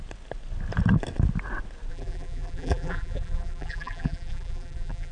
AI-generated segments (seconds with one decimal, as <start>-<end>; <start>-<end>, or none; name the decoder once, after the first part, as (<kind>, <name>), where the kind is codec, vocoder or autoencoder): 1.9-5.1 (vocoder, BigVGAN v2)

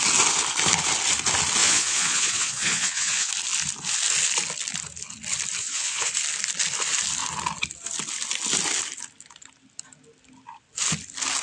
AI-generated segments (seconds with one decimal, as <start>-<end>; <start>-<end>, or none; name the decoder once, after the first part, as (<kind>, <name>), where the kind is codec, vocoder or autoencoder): 1.6-3.3 (vocoder, Vocos); 5.6-6.1

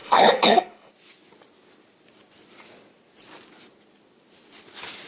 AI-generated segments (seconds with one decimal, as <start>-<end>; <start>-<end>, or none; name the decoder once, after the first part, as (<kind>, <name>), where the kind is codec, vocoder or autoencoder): 0.0-0.9 (codec, HILCodec)

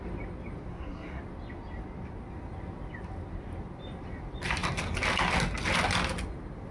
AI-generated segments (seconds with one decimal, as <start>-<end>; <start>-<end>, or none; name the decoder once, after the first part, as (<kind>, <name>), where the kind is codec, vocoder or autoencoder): 0.7-1.2 (codec, SNAC)

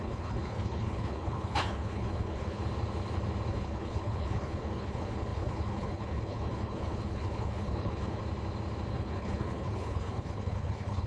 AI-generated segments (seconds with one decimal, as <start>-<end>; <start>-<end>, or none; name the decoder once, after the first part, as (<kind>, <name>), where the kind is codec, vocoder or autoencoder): 0.0-2.6 (codec, HILCodec); 3.5-8.2; 8.9-11.1

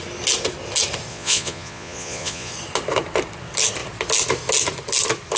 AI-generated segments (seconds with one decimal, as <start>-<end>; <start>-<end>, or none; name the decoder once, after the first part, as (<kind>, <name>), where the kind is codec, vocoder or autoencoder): 1.1-2.5 (vocoder, Vocos)

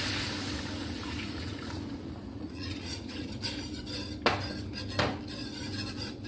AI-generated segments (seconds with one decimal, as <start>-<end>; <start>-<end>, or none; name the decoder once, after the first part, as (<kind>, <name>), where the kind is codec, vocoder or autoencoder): 0.8-3.3 (vocoder, Vocos)